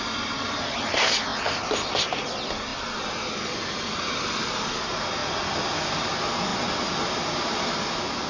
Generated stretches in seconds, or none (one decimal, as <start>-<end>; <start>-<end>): none